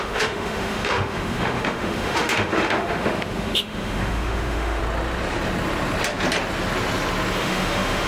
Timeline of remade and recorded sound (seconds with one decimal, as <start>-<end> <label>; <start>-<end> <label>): 0.0-4.8 remade; 4.8-7.4 recorded; 7.4-8.1 remade